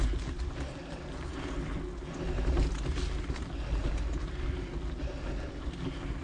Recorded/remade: recorded